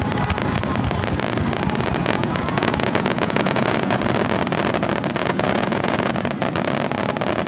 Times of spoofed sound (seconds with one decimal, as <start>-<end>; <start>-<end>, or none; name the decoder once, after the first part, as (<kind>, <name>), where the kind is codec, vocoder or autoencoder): 2.0-4.0 (vocoder, Vocos); 5.2-6.1